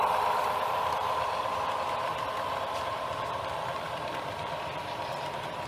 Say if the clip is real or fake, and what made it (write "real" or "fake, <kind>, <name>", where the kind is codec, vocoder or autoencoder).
fake, vocoder, BigVGAN v2